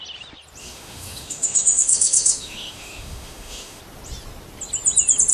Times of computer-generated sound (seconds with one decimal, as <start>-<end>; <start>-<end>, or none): 0.6-3.8